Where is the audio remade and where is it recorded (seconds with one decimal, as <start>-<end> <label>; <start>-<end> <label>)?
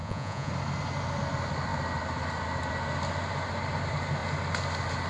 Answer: 0.0-0.5 remade; 0.5-5.1 recorded